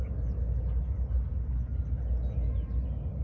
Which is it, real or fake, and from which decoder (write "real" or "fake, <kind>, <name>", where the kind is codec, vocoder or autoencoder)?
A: real